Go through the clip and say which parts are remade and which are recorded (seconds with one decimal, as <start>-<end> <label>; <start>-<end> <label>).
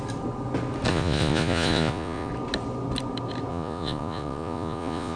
0.0-0.9 recorded; 0.9-2.3 remade; 2.3-3.5 recorded; 3.5-5.2 remade